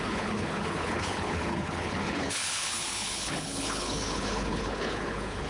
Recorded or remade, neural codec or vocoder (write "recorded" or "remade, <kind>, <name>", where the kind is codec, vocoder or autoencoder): remade, codec, HILCodec